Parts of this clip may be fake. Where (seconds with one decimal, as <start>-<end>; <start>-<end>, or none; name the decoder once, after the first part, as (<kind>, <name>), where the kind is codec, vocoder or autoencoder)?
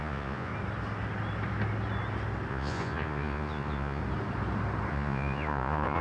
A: 0.0-0.5 (vocoder, Vocos); 2.5-4.0; 4.9-6.0